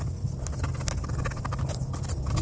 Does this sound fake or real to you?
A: real